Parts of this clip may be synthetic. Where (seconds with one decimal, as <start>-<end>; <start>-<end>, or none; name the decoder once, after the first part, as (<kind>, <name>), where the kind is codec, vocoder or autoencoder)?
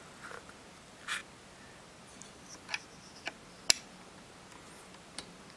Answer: none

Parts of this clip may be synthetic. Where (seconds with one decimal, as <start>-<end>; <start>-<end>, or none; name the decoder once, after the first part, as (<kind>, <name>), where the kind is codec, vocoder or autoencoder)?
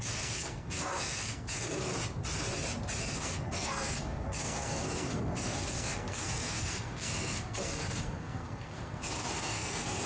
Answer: 0.0-1.9 (codec, SNAC); 3.0-10.1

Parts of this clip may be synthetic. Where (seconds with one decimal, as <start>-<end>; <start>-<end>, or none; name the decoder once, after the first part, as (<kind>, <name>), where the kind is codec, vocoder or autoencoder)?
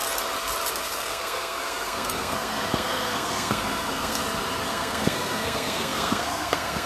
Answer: 0.7-4.2 (codec, SNAC); 4.7-6.9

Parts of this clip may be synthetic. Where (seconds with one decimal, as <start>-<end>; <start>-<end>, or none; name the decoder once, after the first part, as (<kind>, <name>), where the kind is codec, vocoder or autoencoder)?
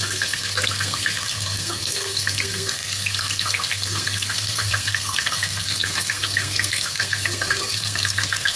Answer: 0.0-8.6 (codec, SNAC)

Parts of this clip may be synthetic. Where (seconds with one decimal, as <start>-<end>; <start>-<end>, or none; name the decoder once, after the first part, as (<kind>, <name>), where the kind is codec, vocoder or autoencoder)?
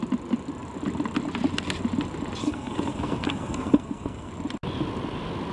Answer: 2.4-4.3 (codec, SNAC)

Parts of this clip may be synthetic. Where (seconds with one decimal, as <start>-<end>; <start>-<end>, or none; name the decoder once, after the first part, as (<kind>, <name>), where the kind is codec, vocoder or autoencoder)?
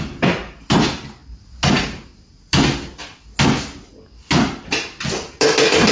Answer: none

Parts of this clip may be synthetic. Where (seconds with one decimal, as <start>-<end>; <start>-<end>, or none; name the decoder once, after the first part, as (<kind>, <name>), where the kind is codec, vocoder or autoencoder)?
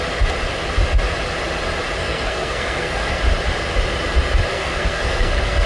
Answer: 2.0-3.2 (codec, SNAC); 4.5-5.7